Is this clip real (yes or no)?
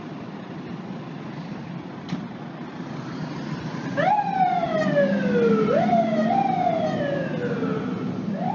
yes